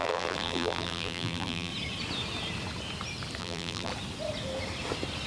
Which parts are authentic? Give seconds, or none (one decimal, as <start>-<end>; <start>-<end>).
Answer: 1.7-3.4; 3.9-5.3